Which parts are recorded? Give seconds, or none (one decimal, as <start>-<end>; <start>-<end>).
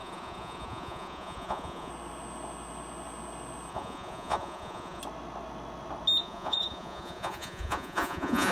1.9-3.7; 5.0-6.2